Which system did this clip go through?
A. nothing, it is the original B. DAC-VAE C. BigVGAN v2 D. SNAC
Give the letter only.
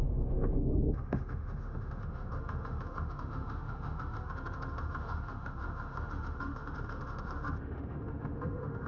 B